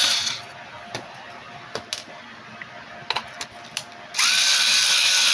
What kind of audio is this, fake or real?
real